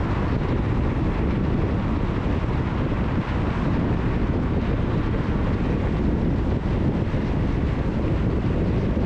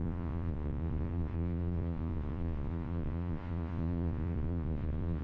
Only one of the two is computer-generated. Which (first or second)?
second